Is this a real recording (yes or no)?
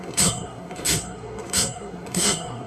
no